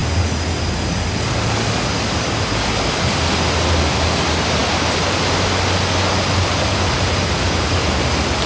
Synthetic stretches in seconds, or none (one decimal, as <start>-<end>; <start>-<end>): none